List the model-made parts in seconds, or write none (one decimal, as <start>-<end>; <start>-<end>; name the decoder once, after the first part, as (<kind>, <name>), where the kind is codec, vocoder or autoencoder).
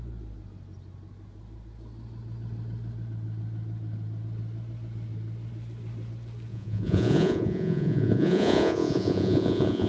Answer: 6.5-9.9 (vocoder, Vocos)